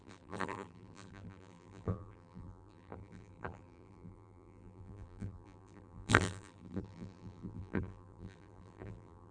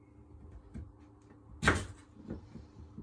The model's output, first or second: first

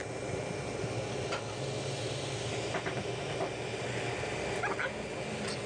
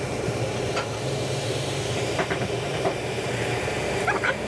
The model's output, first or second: second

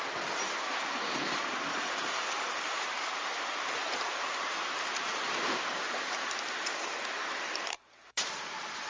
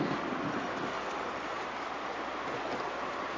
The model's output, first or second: first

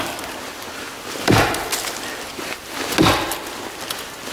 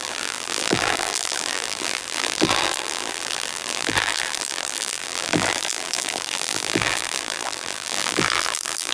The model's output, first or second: second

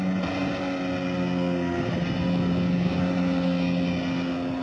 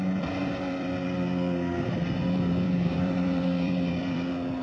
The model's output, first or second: second